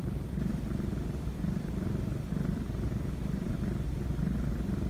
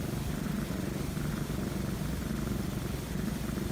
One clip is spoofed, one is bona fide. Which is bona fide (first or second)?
second